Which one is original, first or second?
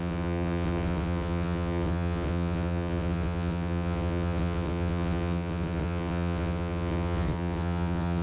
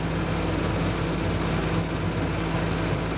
second